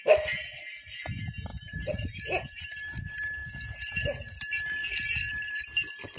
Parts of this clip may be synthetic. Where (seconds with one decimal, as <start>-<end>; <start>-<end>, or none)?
1.5-2.5; 4.8-5.6